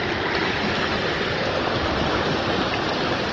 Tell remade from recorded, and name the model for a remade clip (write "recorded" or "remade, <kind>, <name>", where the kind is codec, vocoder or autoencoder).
recorded